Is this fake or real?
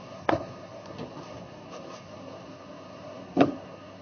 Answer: fake